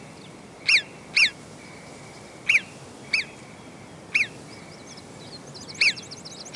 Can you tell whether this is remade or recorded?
recorded